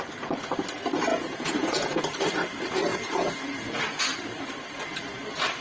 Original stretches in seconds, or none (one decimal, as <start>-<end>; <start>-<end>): 0.0-1.1; 2.0-2.9; 4.0-5.6